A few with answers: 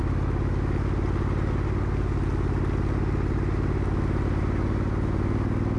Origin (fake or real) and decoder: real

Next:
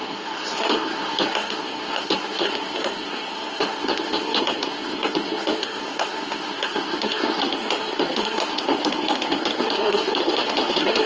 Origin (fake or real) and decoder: fake, codec, SNAC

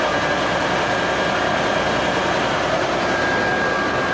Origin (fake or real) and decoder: fake, vocoder, BigVGAN v2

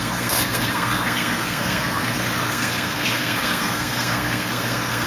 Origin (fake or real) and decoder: fake, codec, SNAC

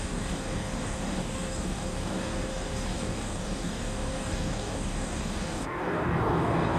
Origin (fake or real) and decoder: fake, codec, DAC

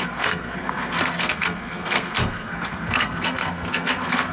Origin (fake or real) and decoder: fake, codec, SNAC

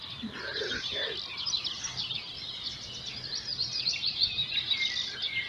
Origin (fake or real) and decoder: real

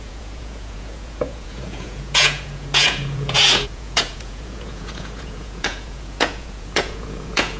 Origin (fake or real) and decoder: fake, vocoder, Vocos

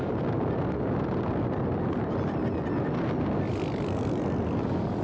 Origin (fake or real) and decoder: real